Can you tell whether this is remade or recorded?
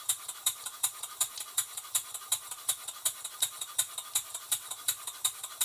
remade